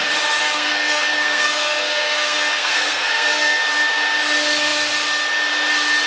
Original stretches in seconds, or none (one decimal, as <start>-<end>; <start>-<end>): 0.0-0.4; 3.6-6.1